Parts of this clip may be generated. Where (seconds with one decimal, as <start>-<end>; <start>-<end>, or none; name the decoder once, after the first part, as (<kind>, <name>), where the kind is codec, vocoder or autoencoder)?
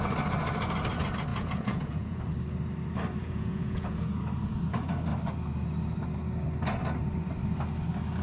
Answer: 1.3-2.2 (vocoder, Vocos); 3.2-4.2